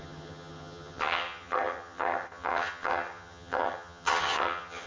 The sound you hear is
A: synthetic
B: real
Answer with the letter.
A